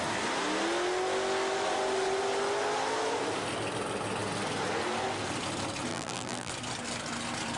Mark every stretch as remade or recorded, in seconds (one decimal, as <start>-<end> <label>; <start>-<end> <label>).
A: 0.0-5.9 recorded; 5.9-6.5 remade; 6.5-7.6 recorded